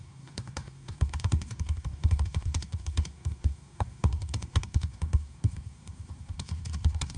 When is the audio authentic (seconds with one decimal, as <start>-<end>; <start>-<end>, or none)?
none